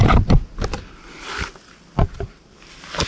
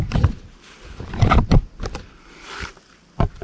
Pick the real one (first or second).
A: first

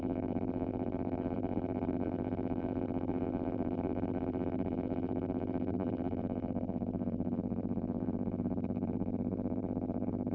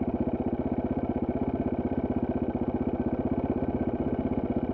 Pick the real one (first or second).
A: second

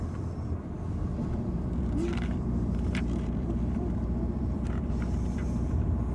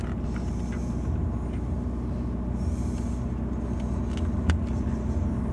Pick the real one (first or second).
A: second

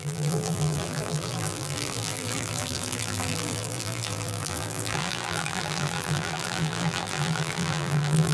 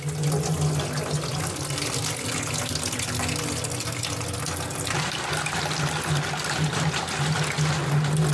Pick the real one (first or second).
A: second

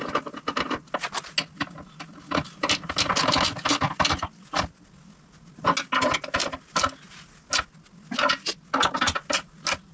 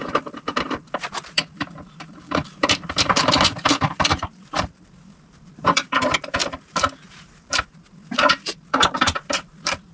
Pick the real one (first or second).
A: first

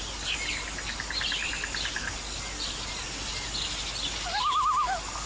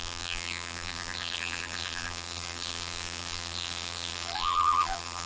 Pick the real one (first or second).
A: first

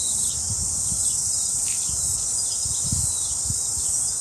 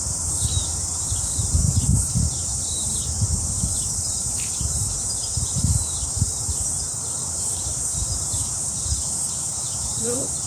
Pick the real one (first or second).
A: first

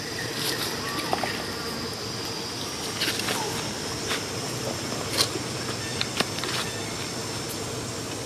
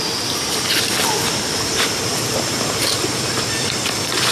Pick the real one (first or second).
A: first